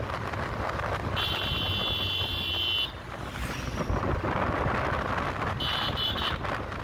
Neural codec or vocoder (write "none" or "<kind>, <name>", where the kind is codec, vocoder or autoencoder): none